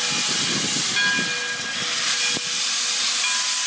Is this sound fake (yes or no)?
no